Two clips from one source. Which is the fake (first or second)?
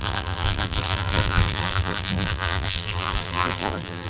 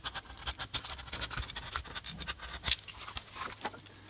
first